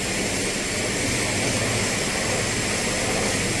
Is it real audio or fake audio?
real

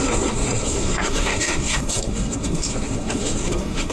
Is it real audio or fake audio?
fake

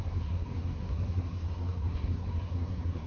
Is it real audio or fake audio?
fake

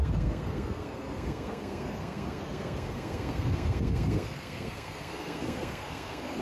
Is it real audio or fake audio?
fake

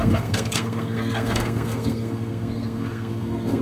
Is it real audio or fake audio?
fake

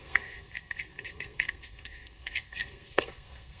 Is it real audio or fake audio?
fake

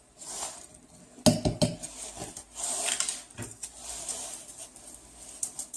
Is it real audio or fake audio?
real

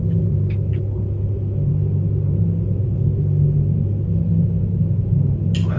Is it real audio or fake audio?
real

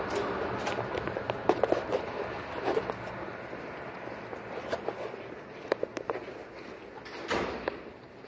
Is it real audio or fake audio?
real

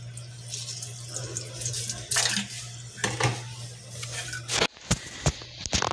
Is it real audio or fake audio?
real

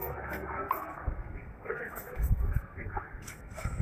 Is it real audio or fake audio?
fake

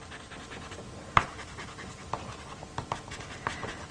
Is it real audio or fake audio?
real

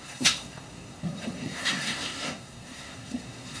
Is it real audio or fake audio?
fake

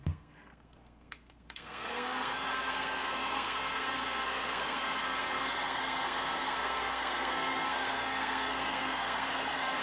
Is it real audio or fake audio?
fake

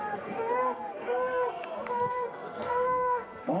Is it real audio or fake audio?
fake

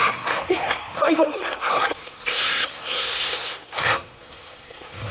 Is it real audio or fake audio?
fake